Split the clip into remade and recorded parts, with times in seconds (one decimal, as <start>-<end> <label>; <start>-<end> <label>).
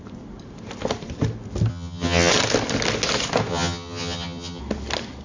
0.0-1.7 recorded; 1.7-2.3 remade; 2.3-3.5 recorded; 3.5-4.6 remade; 4.6-5.2 recorded